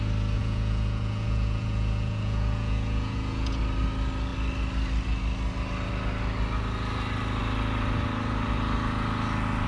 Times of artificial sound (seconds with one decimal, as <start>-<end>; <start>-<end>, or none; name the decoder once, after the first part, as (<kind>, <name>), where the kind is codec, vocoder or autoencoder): 0.4-3.6 (vocoder, Vocos)